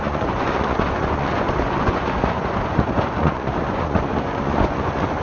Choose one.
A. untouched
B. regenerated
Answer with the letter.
B